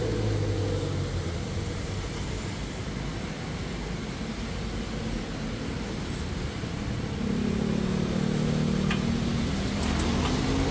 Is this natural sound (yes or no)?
yes